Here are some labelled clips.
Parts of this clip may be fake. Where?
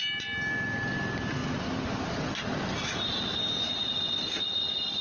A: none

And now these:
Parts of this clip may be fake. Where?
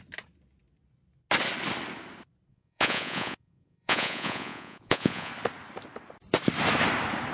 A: 2.5-5.3 (vocoder, Vocos)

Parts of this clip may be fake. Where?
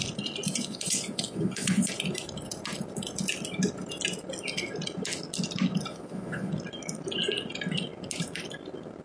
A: 0.5-1.9 (vocoder, Vocos); 5.9-6.5